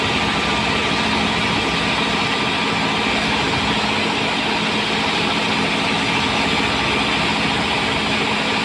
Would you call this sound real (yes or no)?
yes